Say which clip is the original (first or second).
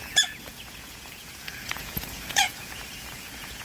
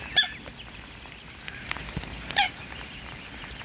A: second